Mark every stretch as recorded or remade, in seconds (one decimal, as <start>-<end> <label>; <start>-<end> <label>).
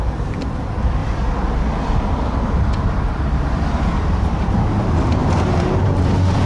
0.0-1.0 remade; 1.0-3.9 recorded; 3.9-6.5 remade